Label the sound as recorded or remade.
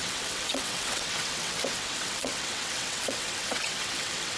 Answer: remade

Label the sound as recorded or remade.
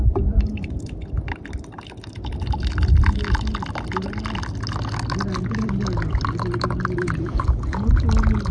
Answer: recorded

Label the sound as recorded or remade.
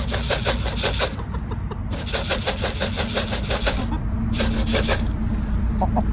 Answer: recorded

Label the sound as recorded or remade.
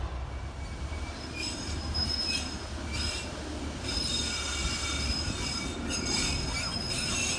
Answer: recorded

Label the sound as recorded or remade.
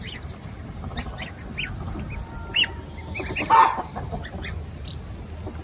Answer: recorded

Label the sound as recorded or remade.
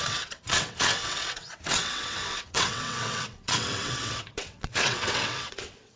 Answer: remade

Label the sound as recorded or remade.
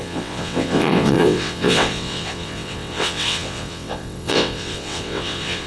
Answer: remade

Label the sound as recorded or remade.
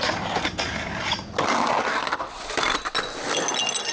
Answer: recorded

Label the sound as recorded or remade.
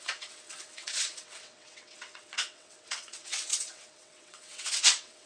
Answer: remade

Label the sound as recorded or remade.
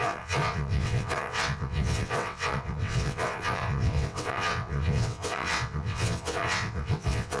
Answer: remade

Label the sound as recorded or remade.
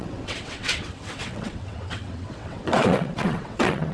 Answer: remade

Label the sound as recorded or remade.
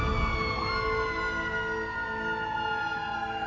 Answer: recorded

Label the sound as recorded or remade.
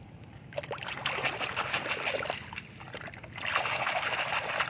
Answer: recorded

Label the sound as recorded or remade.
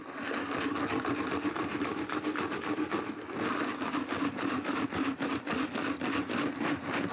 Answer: recorded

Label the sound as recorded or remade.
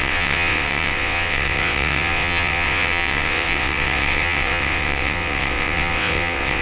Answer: remade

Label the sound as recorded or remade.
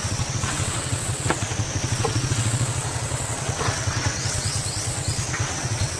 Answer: remade